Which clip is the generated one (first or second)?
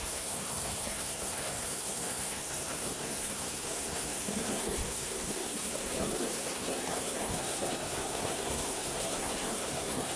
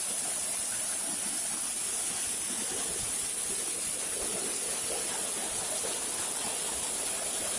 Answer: first